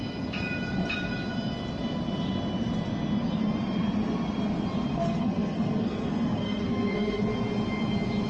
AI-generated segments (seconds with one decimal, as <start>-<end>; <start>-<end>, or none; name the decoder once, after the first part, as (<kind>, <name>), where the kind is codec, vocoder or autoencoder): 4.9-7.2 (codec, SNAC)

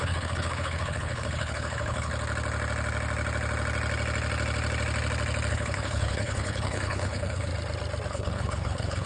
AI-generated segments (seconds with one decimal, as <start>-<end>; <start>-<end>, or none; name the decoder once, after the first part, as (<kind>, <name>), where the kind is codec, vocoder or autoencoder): 0.0-2.1 (codec, HILCodec); 5.5-7.5; 8.1-9.1

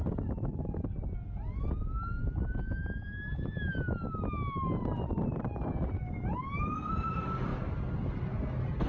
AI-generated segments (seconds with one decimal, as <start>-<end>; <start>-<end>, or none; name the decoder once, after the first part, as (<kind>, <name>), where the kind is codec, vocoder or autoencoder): 4.8-7.5 (vocoder, BigVGAN v2)

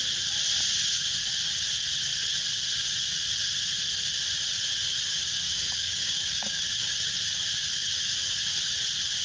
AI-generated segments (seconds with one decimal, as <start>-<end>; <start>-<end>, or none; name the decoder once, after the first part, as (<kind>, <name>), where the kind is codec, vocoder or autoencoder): 5.4-6.6 (codec, DAC)